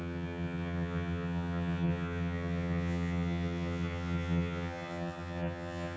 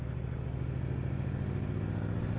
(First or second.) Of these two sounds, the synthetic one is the first